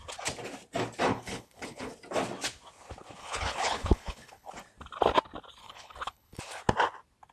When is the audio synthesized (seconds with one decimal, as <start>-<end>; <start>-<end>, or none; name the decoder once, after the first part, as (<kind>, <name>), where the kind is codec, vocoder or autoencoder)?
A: 1.1-1.9 (codec, HILCodec); 3.2-4.5; 5.6-6.4